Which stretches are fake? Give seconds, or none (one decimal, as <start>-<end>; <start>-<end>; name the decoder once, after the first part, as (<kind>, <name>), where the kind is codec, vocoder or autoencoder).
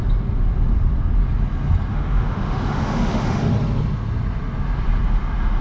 1.9-3.5 (autoencoder, DAC-VAE)